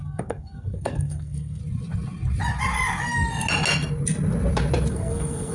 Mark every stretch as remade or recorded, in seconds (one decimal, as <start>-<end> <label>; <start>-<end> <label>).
0.0-1.6 remade; 1.6-4.9 recorded; 4.9-5.5 remade